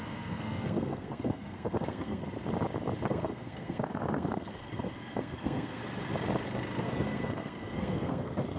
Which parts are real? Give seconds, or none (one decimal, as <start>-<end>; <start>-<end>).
2.2-3.1; 5.8-6.8